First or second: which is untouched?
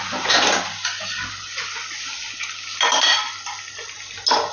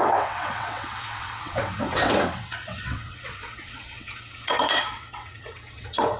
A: first